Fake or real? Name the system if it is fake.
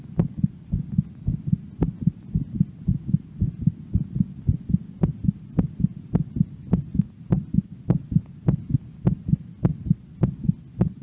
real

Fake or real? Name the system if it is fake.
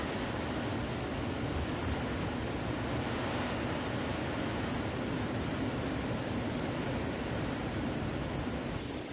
real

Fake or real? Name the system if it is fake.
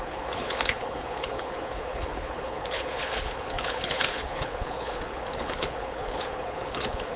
fake, codec, HILCodec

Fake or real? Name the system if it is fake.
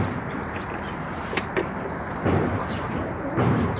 fake, vocoder, BigVGAN v2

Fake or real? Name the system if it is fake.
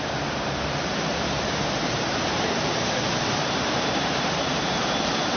fake, vocoder, BigVGAN v2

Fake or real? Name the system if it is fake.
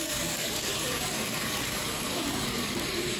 fake, codec, DAC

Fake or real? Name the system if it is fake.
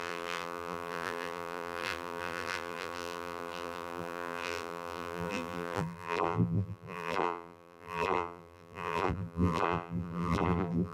fake, vocoder, BigVGAN v2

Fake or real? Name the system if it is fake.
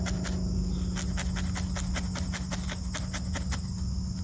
real